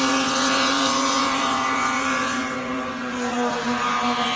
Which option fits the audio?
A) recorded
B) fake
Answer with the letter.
B